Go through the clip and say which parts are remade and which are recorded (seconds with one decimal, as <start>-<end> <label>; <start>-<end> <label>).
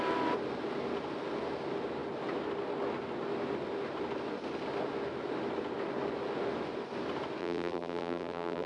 0.0-7.4 recorded; 7.4-8.7 remade